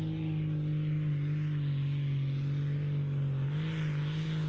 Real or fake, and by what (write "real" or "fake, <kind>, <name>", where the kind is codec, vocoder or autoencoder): real